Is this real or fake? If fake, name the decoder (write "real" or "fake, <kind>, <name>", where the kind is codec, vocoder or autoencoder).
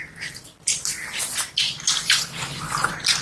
real